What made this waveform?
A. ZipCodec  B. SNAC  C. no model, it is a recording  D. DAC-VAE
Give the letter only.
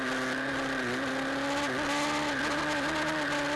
C